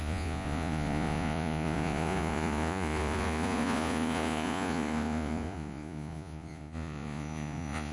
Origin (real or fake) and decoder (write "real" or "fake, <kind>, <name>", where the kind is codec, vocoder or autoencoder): fake, vocoder, Vocos